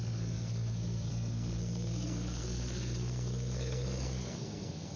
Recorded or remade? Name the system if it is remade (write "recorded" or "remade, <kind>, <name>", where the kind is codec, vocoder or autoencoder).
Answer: remade, codec, SNAC